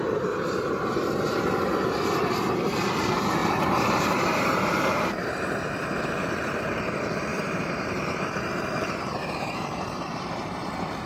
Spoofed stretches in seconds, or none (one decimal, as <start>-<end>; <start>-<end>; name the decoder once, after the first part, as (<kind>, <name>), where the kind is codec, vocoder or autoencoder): 3.4-5.6 (vocoder, BigVGAN v2); 7.3-11.1